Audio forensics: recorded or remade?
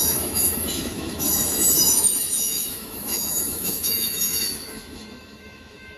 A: remade